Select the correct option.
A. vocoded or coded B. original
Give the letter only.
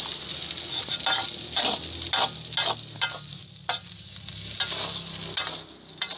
B